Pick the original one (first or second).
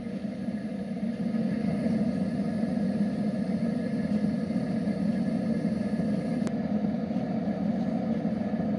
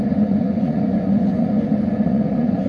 first